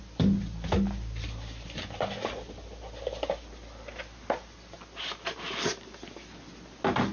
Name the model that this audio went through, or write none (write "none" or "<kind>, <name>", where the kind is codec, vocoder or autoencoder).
none